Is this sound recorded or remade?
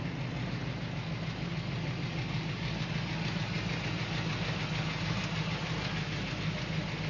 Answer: recorded